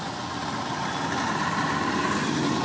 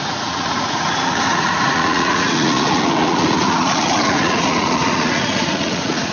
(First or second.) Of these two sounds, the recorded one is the first